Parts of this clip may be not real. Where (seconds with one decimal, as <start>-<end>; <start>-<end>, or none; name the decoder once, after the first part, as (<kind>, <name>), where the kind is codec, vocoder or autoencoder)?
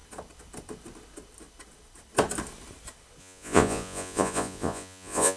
3.2-5.4 (vocoder, Vocos)